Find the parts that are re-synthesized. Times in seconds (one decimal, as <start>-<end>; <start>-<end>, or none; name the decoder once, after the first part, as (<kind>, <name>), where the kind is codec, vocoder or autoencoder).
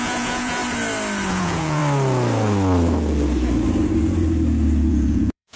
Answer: 0.0-0.6 (vocoder, Vocos); 1.3-1.8; 4.9-5.6